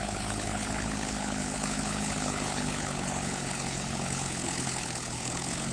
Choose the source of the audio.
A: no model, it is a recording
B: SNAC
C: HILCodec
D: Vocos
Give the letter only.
C